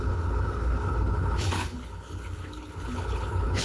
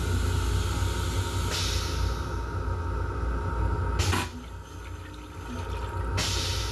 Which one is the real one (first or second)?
second